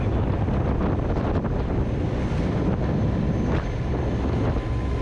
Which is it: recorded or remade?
recorded